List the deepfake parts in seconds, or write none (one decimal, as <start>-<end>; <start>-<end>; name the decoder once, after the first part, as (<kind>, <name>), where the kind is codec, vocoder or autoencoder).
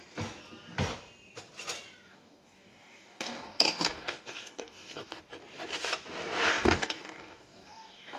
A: 2.1-5.2 (codec, DAC); 6.5-8.2